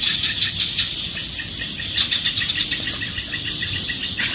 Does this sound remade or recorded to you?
recorded